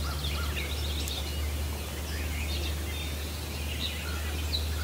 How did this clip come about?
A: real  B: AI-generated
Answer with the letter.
A